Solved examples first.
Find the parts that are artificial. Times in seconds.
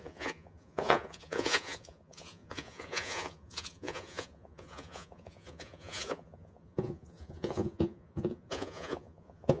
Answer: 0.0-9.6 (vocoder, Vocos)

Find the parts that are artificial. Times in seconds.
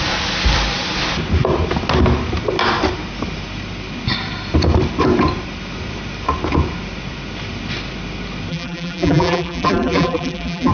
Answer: 8.5-10.7 (vocoder, BigVGAN v2)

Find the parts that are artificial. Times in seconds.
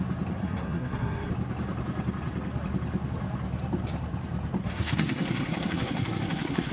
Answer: 0.4-1.3 (codec, SNAC); 4.6-6.7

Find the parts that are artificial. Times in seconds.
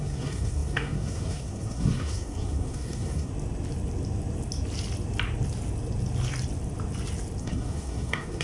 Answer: 0.0-3.3 (codec, SNAC); 7.4-8.4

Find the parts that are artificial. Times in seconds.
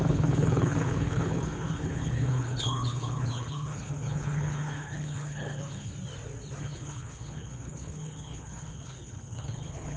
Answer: 0.0-5.9 (codec, HILCodec); 6.6-10.0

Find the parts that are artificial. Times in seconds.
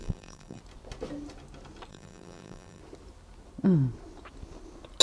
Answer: 0.0-0.6 (vocoder, BigVGAN v2); 1.9-2.8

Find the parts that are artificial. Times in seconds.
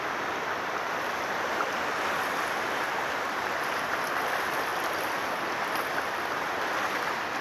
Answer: 0.0-4.7 (vocoder, BigVGAN v2); 6.4-7.4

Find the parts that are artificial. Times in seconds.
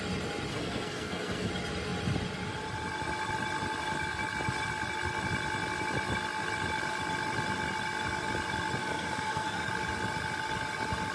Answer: 0.5-1.5 (codec, SNAC); 8.8-9.7